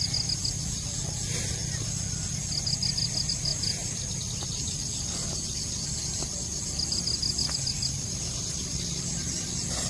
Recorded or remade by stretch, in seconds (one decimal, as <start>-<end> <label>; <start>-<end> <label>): 0.0-9.9 recorded

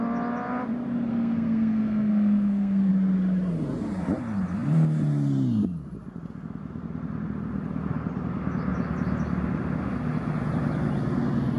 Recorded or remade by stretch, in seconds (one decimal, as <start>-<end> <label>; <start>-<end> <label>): 0.0-1.1 recorded; 1.1-2.9 remade; 2.9-11.6 recorded

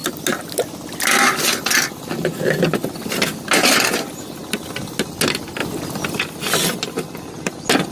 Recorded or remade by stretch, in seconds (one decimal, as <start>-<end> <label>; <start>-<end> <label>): 0.0-7.9 recorded

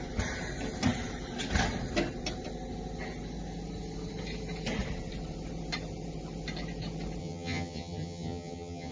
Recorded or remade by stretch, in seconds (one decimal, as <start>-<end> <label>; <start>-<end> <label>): 0.0-7.2 recorded; 7.2-8.9 remade